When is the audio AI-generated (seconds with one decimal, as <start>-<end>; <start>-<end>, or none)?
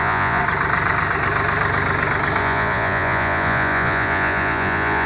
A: 0.0-0.4; 2.4-5.1